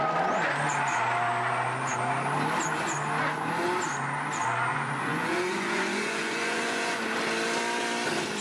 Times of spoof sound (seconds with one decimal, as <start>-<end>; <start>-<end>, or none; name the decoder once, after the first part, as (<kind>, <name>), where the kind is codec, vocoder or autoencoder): 4.7-7.0 (vocoder, Vocos)